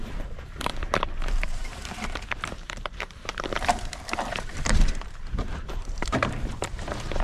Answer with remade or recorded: remade